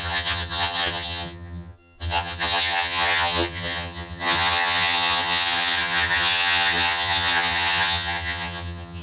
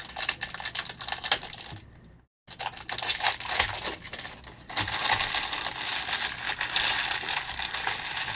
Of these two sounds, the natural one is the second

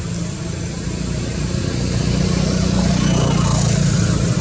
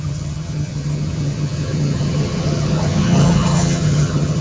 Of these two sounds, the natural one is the first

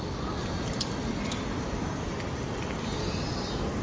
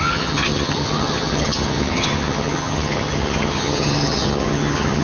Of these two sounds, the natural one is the first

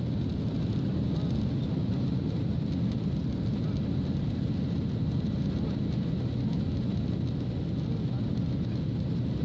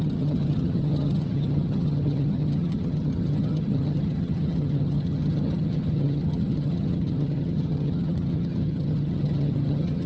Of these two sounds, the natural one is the first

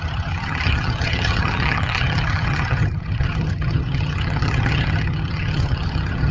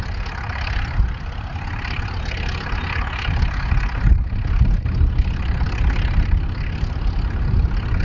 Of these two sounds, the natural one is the second